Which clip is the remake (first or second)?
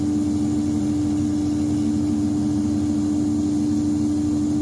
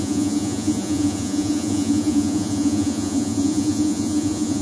second